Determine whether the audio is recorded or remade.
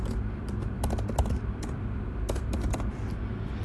recorded